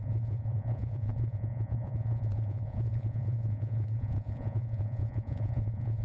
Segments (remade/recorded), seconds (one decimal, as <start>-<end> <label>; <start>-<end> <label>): 0.0-6.0 remade